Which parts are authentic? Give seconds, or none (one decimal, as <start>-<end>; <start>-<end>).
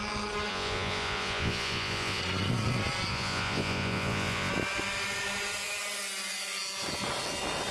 0.0-0.5; 2.2-3.1; 4.5-7.7